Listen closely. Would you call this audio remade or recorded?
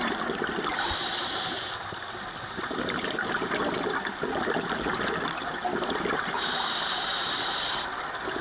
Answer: recorded